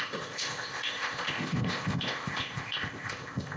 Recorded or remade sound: remade